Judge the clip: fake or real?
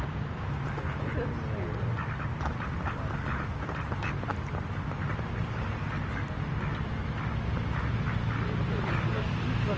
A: real